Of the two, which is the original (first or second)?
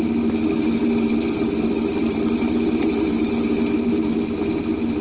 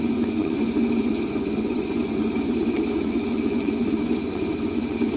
first